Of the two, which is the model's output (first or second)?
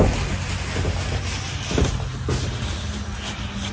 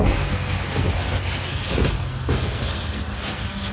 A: second